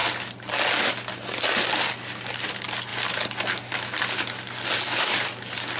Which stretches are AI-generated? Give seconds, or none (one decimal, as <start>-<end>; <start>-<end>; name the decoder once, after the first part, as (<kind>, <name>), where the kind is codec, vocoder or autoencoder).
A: none